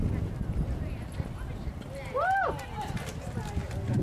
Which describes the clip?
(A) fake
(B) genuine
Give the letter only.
B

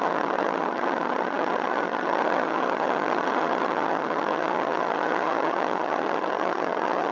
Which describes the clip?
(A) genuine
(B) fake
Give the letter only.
B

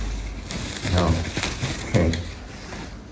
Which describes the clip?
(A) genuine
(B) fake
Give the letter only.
A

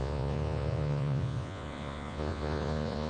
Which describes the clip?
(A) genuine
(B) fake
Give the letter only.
B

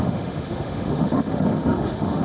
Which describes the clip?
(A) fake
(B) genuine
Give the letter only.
A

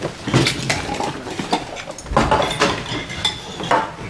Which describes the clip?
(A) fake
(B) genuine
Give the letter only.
B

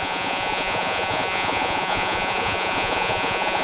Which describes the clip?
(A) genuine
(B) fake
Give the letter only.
B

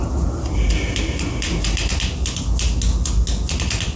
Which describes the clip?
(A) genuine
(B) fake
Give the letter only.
A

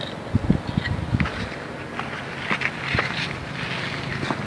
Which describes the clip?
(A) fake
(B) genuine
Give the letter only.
B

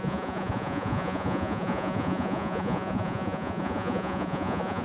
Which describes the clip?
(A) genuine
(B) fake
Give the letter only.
B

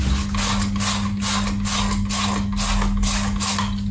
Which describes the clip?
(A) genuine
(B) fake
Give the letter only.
A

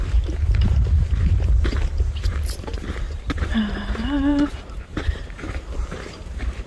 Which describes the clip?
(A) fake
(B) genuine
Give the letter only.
A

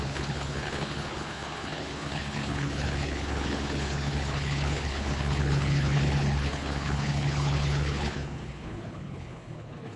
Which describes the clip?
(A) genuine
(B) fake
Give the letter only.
B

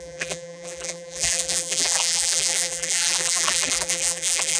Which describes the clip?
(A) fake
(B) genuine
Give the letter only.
A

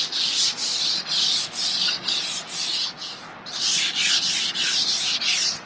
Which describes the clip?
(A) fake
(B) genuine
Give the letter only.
B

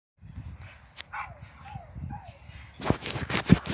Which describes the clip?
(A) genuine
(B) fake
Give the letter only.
A